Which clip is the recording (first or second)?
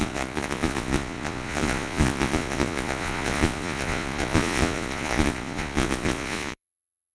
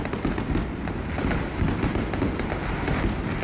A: second